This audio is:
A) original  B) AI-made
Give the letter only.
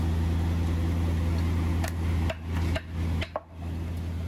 A